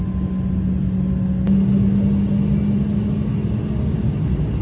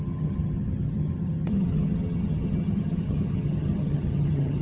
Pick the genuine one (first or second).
first